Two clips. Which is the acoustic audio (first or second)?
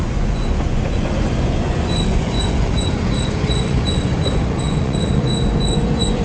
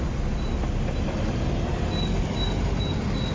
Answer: second